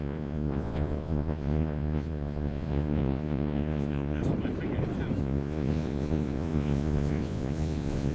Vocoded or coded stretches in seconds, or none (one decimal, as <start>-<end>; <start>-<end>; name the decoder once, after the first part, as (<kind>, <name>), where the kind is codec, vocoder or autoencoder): 0.0-4.2 (vocoder, Vocos); 5.2-8.1